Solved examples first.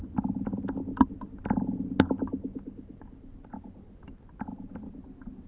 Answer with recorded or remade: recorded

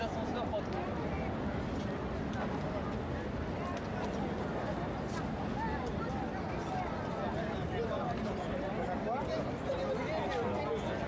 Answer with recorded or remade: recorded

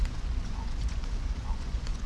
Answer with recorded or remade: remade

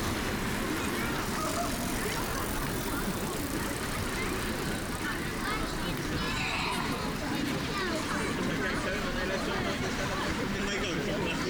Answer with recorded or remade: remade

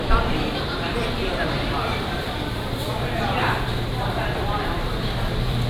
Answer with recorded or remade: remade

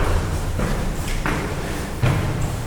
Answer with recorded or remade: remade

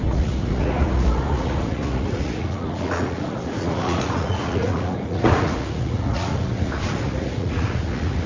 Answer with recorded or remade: remade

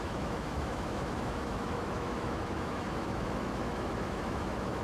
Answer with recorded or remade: remade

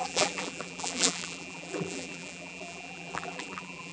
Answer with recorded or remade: remade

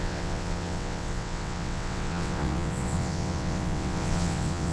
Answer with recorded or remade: remade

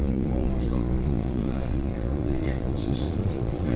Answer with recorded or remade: remade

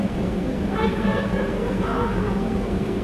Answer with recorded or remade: remade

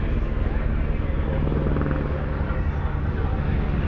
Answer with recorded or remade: recorded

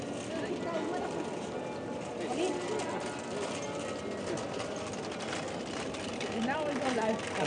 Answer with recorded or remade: recorded